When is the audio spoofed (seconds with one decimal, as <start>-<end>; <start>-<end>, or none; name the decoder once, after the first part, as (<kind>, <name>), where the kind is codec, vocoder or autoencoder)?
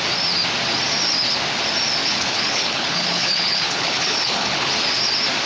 2.0-4.7 (codec, HILCodec)